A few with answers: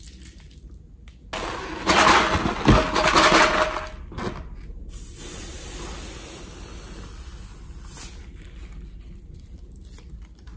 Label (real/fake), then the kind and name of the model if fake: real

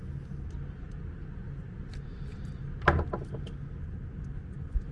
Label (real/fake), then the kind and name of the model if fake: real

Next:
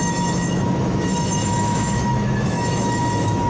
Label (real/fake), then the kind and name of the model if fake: fake, autoencoder, DAC-VAE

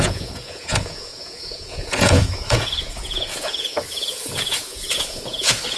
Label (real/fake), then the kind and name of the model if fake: fake, vocoder, Vocos